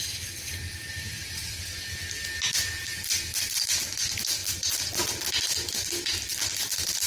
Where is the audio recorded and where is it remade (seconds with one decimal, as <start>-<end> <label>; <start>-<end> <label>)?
0.0-7.1 recorded